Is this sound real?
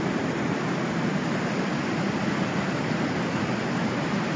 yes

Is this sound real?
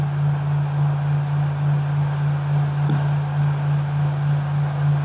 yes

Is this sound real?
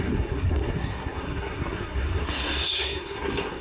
no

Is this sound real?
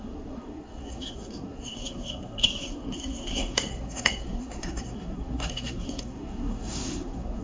no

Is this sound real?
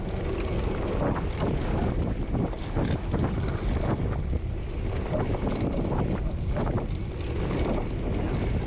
yes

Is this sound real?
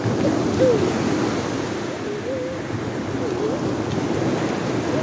yes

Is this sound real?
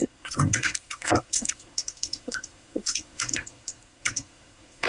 no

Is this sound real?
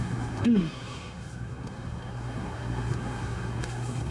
no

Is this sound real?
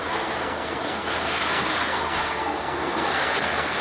no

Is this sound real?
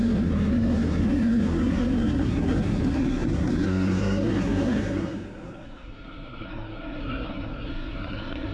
no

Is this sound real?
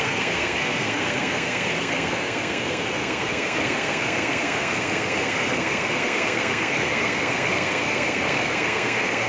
no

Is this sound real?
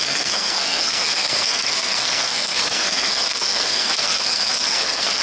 no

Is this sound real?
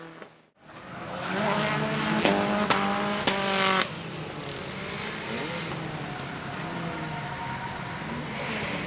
yes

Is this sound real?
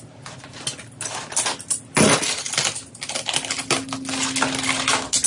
yes